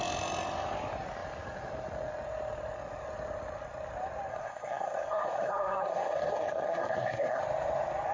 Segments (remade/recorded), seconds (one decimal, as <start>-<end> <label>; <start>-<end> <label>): 0.0-4.3 recorded; 4.3-7.4 remade; 7.4-8.1 recorded